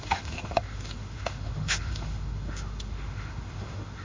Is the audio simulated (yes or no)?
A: yes